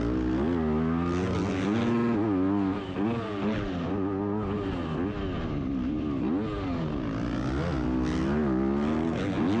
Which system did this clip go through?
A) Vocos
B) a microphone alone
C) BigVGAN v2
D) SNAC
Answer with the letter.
B